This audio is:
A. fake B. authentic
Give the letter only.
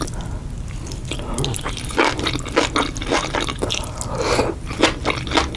B